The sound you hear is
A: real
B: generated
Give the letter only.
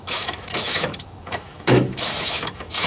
B